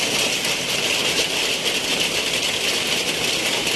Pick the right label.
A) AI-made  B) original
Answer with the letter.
B